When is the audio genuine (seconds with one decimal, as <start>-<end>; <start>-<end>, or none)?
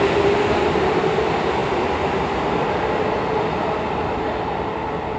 0.0-5.2